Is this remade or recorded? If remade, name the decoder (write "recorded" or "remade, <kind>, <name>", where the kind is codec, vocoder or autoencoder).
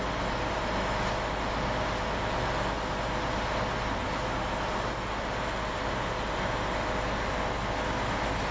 recorded